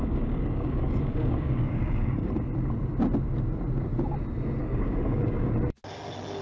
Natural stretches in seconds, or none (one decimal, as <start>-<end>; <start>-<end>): 2.3-4.6; 5.5-6.4